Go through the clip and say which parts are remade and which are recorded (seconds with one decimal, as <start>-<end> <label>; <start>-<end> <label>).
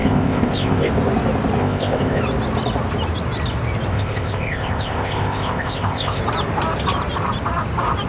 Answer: 0.0-0.9 remade; 0.9-1.6 recorded; 1.6-2.2 remade; 2.2-3.9 recorded; 3.9-6.2 remade; 6.2-8.1 recorded